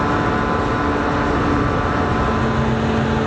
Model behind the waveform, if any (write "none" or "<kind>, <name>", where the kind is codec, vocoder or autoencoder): none